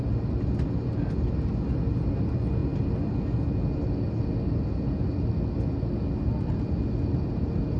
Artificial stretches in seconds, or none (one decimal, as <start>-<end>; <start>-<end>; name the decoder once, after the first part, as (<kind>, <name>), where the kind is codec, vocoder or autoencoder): none

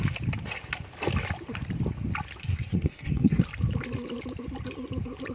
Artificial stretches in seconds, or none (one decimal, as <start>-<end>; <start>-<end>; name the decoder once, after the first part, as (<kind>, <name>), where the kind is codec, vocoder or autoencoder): 2.4-3.4 (codec, SNAC)

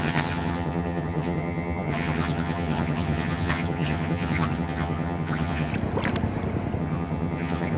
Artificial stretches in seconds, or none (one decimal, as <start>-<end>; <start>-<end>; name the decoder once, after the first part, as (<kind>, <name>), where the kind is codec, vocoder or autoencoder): 0.0-5.7 (vocoder, HiFi-GAN); 6.8-7.8

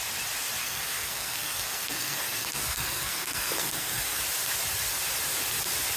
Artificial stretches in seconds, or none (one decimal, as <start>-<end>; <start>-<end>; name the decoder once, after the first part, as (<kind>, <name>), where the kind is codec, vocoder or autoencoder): 0.6-4.2 (codec, SNAC)